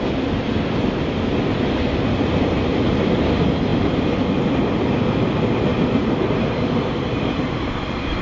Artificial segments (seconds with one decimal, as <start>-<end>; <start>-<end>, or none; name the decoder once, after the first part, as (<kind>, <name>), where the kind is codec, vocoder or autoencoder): 5.7-8.2 (vocoder, BigVGAN v2)